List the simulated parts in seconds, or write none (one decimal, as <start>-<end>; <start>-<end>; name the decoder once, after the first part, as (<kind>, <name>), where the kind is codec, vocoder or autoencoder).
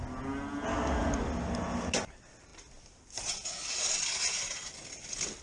none